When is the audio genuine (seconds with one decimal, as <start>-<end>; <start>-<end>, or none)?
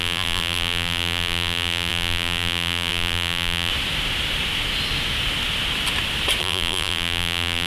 3.7-6.4